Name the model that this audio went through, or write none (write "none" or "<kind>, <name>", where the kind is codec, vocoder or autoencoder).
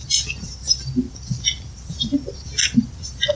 vocoder, BigVGAN v2